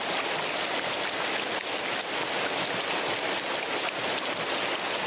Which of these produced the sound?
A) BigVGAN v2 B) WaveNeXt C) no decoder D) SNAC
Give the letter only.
C